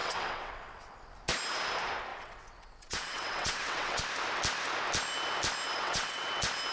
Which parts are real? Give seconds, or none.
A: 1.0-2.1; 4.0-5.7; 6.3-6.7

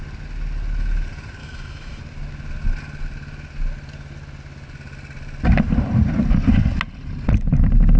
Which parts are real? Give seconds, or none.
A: 0.0-1.4; 2.0-8.0

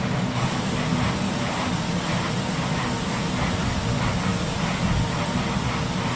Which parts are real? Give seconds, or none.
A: 0.0-6.2

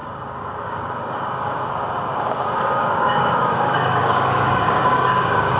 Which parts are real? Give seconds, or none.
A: 1.7-2.1

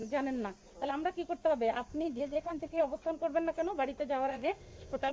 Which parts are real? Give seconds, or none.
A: 0.0-1.9; 2.8-4.3

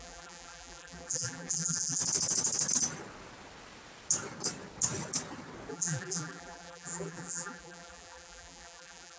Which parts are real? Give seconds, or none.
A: 2.0-5.7

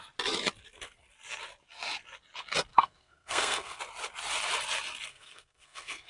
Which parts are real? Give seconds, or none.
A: 0.0-2.7; 3.8-5.1

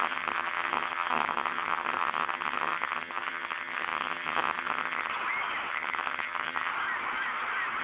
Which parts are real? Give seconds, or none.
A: 5.1-5.7; 6.7-7.8